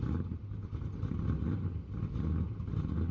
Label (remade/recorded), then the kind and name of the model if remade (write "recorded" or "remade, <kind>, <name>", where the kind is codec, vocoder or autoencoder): recorded